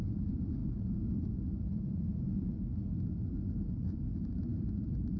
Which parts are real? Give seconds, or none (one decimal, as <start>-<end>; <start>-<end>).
0.6-1.7; 2.7-3.3